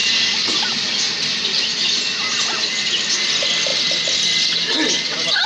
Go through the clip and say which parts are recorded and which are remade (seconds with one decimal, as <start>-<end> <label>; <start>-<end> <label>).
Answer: 0.0-5.5 recorded